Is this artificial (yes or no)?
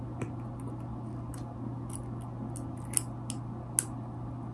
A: no